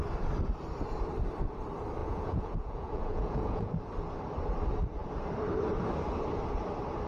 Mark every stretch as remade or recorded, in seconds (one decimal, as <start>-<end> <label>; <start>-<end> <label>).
0.0-2.0 recorded; 2.0-3.7 remade; 3.7-7.1 recorded